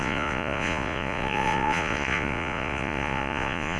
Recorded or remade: remade